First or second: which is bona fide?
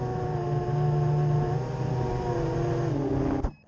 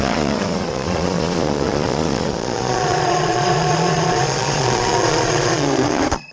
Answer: first